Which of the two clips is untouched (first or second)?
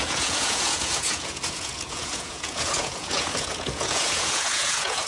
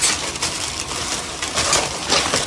second